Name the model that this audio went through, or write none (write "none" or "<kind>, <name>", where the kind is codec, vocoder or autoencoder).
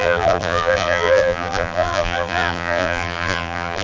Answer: vocoder, BigVGAN v2